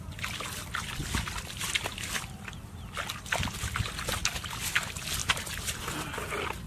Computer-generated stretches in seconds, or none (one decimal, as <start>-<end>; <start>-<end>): none